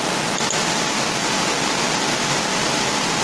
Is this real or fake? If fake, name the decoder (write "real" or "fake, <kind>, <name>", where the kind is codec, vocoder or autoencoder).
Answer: real